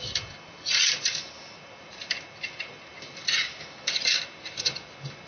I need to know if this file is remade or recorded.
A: recorded